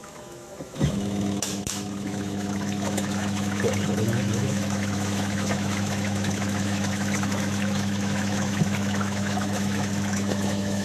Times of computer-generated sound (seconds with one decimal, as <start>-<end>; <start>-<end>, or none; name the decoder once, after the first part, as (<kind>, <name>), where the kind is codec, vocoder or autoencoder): 0.0-10.8 (autoencoder, DAC-VAE)